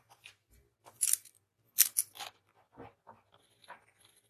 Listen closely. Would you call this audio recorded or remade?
recorded